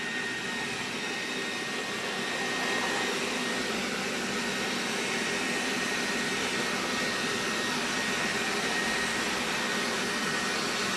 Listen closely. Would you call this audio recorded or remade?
recorded